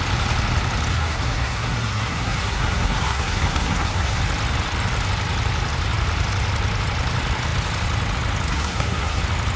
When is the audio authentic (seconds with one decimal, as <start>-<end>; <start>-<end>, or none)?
0.0-0.9; 4.2-8.5; 9.2-9.6